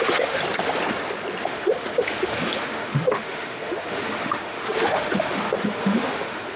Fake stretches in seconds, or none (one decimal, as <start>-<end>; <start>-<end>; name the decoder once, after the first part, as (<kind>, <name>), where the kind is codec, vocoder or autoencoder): 0.0-0.4 (autoencoder, DAC-VAE); 1.4-6.6